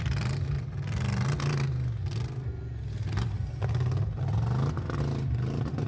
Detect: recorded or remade recorded